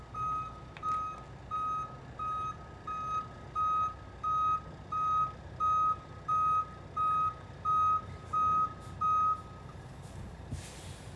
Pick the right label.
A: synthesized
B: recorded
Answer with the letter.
B